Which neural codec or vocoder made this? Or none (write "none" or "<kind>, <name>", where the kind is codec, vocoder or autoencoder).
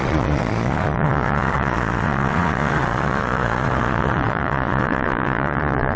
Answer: vocoder, Vocos